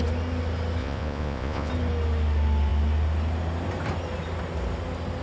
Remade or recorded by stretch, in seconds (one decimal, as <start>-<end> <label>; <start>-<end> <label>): 0.0-0.8 recorded; 0.8-1.7 remade; 1.7-5.2 recorded